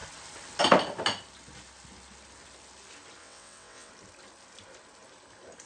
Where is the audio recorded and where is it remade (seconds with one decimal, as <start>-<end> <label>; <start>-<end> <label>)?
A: 0.0-3.2 recorded; 3.2-3.9 remade; 3.9-5.7 recorded